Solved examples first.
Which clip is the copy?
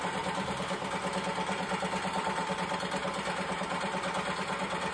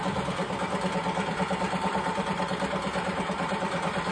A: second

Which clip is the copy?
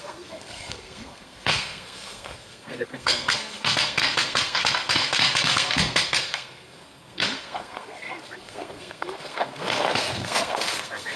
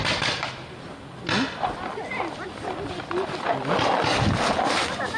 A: first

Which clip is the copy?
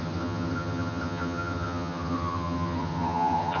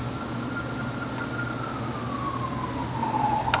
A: first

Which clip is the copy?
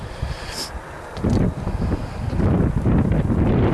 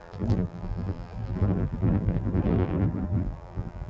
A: second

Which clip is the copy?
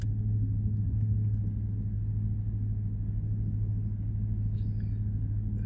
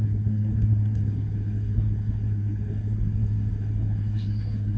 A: second